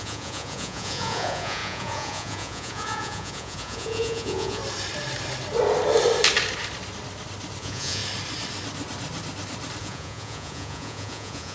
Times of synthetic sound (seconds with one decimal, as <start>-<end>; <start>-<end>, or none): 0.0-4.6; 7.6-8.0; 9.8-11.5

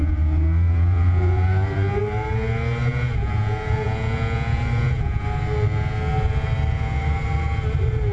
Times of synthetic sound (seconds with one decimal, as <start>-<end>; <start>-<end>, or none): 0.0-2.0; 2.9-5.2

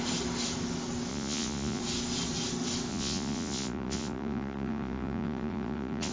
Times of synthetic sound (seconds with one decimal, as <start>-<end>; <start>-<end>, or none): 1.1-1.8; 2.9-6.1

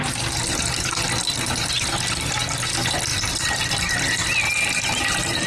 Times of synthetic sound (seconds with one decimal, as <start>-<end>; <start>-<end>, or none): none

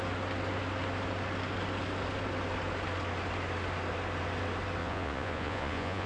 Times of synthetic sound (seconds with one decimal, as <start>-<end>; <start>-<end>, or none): 4.8-6.1